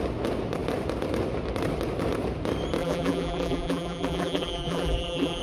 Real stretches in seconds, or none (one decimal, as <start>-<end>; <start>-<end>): 0.0-2.8